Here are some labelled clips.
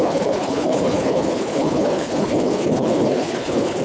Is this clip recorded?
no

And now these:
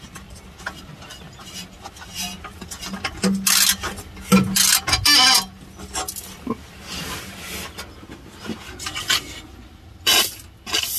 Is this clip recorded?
yes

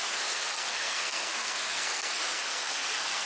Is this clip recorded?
no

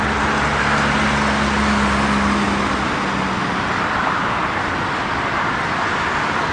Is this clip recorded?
yes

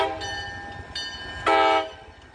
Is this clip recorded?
yes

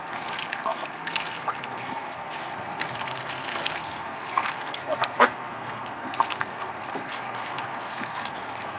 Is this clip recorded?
no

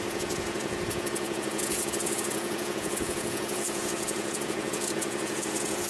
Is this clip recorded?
no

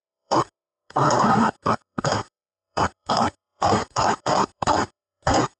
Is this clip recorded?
no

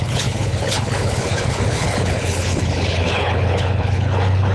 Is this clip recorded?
no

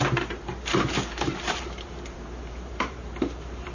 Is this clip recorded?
no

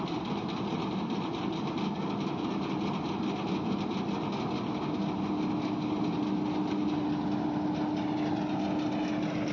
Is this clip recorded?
yes